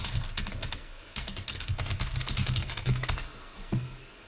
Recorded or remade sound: remade